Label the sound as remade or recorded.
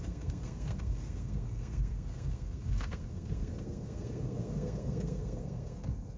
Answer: remade